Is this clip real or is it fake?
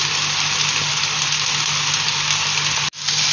real